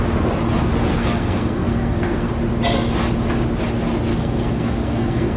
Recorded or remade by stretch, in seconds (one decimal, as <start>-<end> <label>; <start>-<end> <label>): 0.0-0.9 recorded; 0.9-2.3 remade; 2.3-4.1 recorded; 4.1-5.4 remade